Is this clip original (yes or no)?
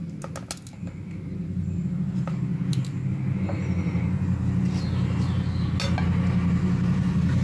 yes